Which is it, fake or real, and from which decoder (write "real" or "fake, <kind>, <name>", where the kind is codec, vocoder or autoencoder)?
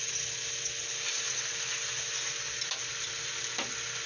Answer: real